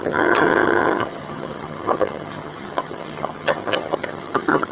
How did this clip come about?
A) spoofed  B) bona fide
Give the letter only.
A